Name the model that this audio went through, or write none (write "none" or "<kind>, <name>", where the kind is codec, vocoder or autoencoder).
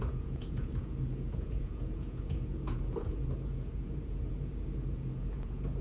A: vocoder, Vocos